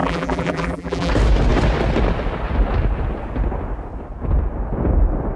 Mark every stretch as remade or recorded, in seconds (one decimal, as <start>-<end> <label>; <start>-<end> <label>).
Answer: 0.0-1.1 remade; 1.1-5.4 recorded